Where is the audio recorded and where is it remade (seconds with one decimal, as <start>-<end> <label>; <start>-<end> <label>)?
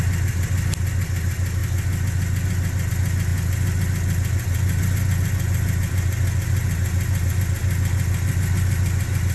0.0-9.3 recorded